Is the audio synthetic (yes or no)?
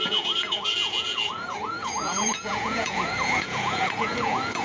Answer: yes